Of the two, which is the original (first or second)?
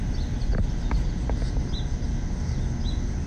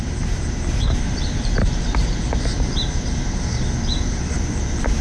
first